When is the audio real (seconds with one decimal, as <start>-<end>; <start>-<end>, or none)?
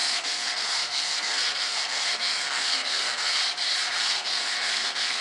3.4-4.0